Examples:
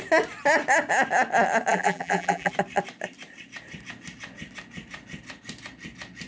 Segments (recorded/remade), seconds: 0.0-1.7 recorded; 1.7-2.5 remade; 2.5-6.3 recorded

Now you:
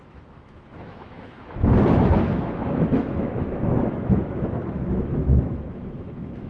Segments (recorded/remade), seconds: 0.0-6.5 remade